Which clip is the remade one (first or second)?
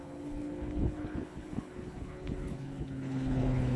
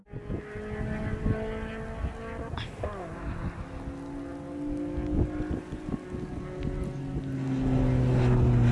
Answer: first